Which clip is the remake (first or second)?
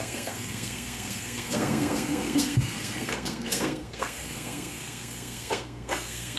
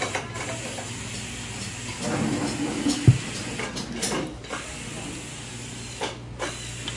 first